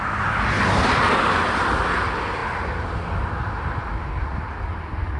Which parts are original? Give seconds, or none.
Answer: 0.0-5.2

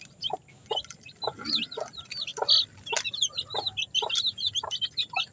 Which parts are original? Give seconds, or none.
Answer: 0.0-5.3

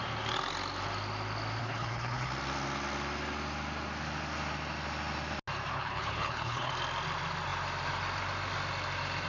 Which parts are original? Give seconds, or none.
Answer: 0.0-1.6; 2.3-5.7; 6.7-9.3